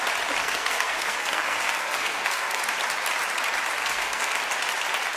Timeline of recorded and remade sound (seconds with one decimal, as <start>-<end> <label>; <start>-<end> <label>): 0.0-0.4 recorded; 0.4-2.6 remade; 2.6-3.8 recorded; 3.8-4.4 remade; 4.4-5.2 recorded